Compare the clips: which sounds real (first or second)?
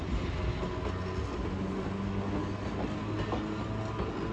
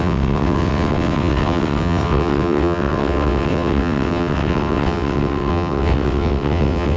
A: first